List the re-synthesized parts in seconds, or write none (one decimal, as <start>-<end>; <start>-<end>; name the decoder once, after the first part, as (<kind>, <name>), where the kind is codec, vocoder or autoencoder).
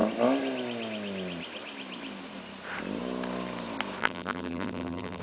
4.0-5.2 (vocoder, BigVGAN v2)